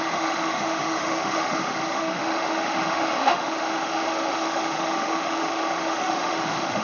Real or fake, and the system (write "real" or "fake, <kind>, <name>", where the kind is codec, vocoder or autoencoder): fake, autoencoder, DAC-VAE